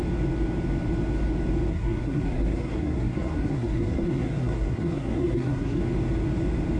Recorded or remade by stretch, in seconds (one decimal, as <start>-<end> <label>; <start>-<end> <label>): 0.0-1.7 recorded; 1.7-5.8 remade; 5.8-6.8 recorded